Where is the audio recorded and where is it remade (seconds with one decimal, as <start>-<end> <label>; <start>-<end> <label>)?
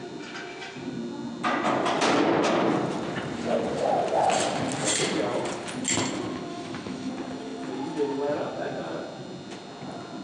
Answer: 0.0-6.5 recorded; 6.5-7.1 remade; 7.1-10.2 recorded